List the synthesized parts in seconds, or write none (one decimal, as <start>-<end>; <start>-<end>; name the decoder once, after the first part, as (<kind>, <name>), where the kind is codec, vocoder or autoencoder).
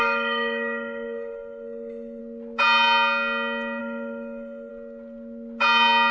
0.0-2.2 (codec, DAC); 3.8-4.7